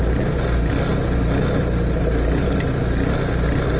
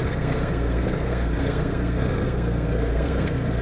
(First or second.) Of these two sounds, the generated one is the second